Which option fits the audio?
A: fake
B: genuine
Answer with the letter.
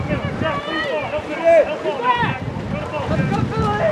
B